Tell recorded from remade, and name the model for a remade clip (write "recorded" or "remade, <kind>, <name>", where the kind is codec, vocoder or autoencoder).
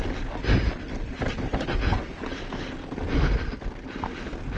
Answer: recorded